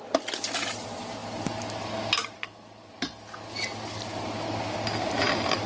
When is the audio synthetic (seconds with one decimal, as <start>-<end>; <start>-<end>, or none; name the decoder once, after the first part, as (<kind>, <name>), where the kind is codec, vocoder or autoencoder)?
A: none